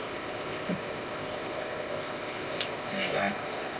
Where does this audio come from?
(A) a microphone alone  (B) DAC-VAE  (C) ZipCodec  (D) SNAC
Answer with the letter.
C